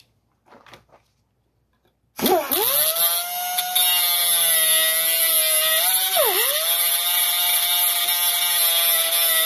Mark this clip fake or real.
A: real